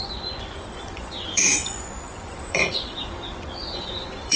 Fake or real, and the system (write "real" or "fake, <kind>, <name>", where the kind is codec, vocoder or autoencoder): fake, vocoder, Vocos